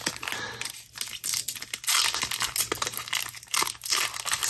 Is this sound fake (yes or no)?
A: no